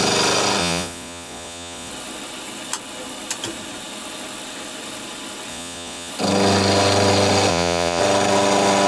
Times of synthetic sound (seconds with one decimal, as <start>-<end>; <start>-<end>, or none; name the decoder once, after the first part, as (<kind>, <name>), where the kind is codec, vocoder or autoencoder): 0.6-1.9 (vocoder, Vocos); 5.5-6.1; 7.5-8.0